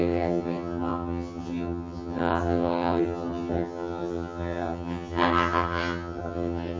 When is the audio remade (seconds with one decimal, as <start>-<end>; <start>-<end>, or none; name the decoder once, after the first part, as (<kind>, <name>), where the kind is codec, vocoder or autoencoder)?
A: 0.0-6.8 (vocoder, HiFi-GAN)